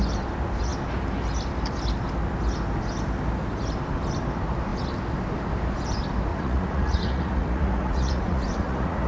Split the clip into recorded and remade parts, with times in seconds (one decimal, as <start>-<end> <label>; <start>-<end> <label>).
0.0-6.3 recorded; 6.3-9.1 remade